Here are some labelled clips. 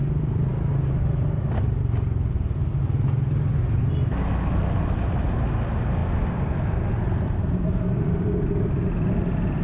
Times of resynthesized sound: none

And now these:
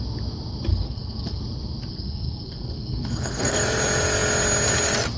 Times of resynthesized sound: 0.7-1.4; 1.9-3.6

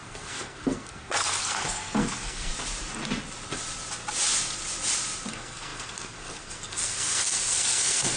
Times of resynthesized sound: 0.0-2.5; 5.3-8.2

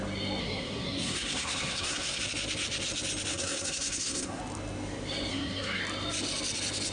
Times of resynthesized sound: 0.4-2.2; 3.3-4.4; 5.3-5.8

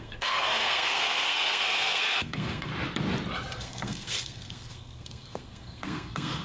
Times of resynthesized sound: 0.0-2.7; 3.6-6.4